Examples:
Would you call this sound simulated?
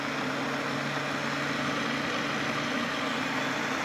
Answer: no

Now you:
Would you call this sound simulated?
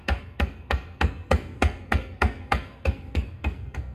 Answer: yes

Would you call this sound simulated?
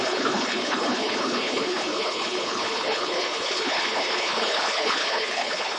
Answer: yes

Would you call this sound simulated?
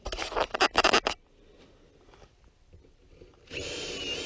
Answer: no